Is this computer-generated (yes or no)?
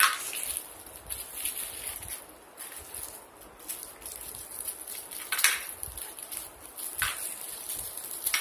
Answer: no